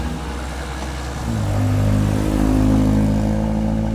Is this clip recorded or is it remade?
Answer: recorded